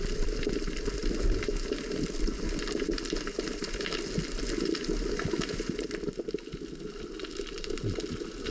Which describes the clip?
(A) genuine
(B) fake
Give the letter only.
A